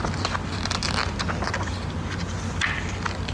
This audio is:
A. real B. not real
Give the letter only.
A